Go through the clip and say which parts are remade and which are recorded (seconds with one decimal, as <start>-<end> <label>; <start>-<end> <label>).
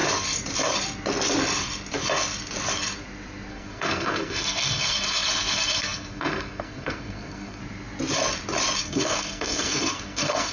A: 0.0-3.5 recorded; 3.5-7.6 remade; 7.6-8.8 recorded; 8.8-10.5 remade